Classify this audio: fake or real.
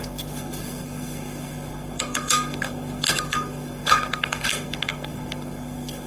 fake